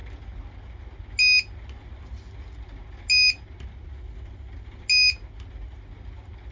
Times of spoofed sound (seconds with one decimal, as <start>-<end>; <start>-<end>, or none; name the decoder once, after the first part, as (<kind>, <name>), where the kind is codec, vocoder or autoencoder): none